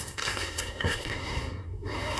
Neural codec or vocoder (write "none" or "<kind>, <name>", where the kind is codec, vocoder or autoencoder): codec, SNAC